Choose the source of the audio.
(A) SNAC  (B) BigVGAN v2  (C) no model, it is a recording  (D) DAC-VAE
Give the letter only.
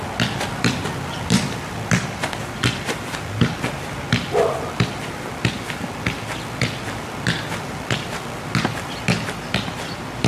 C